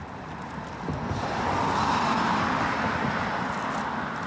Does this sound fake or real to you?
real